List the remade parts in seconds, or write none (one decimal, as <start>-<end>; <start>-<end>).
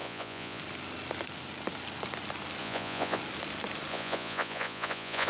0.0-0.6; 2.6-3.2; 3.9-5.3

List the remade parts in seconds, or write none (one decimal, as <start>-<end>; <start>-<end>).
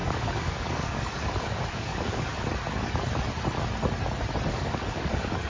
0.0-2.3; 4.5-5.5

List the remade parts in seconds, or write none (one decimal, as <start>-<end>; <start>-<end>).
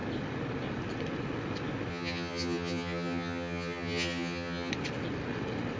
1.9-4.7